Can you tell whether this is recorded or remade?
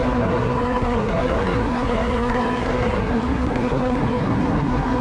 remade